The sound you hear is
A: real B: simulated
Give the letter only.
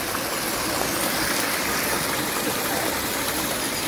A